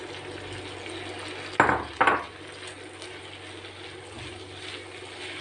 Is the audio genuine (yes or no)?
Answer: yes